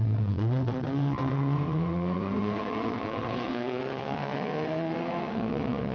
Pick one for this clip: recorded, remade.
remade